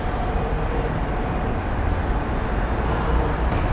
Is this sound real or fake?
real